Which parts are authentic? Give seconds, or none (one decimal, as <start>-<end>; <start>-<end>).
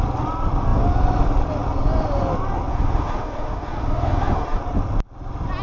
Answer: 0.0-2.7; 4.6-5.6